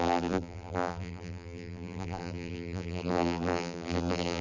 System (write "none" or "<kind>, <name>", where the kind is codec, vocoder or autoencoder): vocoder, BigVGAN v2